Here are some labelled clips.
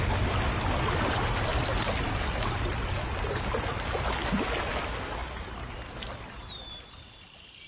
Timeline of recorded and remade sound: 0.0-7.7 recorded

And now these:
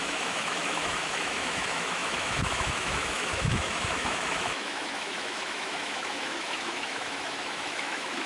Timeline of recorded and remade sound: 0.0-8.3 remade

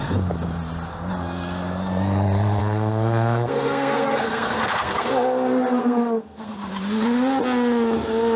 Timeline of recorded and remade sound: 0.0-2.6 recorded; 2.6-5.1 remade; 5.1-5.8 recorded; 5.8-6.5 remade; 6.5-8.4 recorded

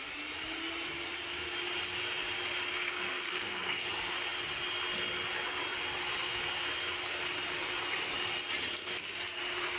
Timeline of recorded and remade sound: 0.0-2.9 recorded; 2.9-3.9 remade; 3.9-9.8 recorded